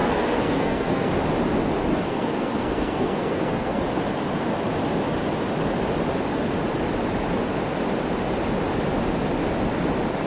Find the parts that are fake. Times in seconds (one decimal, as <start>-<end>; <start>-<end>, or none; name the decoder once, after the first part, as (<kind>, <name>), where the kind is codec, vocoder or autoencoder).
0.0-1.1 (codec, SNAC); 1.9-3.8

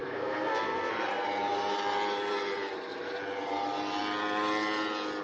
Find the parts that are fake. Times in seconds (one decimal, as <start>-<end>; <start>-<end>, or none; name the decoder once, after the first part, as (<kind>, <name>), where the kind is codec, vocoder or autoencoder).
0.0-0.9 (codec, SNAC)

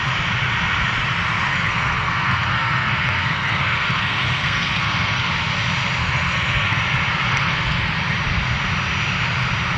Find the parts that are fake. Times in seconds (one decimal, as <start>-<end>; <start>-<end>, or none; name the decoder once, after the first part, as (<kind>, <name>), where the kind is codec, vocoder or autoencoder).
1.5-5.3 (codec, SNAC); 6.0-6.8; 7.3-7.9

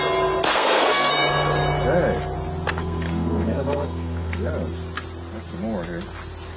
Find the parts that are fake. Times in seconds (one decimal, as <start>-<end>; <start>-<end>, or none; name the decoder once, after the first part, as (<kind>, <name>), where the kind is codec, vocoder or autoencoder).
0.5-1.1 (codec, SNAC); 2.8-4.5

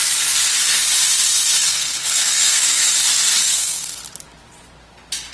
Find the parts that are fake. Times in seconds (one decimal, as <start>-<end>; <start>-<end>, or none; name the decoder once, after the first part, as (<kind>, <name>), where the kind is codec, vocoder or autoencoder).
1.6-2.9 (codec, SNAC); 3.5-4.0

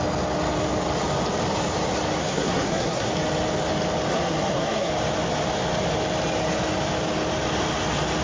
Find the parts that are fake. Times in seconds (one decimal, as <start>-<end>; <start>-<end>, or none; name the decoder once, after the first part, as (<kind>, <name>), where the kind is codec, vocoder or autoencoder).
2.2-3.1 (codec, SNAC); 4.1-4.9

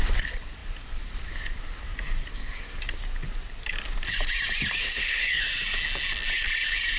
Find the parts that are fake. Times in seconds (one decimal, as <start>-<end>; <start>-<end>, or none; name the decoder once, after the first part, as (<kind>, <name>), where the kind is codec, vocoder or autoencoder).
2.3-2.8 (codec, SNAC); 4.8-5.4

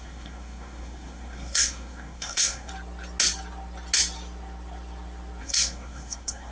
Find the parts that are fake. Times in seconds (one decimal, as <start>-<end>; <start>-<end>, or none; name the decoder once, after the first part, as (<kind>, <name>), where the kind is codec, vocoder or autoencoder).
0.0-2.7 (codec, SNAC); 5.4-6.5